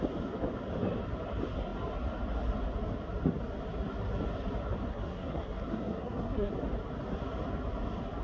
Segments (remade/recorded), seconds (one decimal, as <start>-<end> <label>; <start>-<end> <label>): 0.0-4.9 recorded; 4.9-6.5 remade; 6.5-8.2 recorded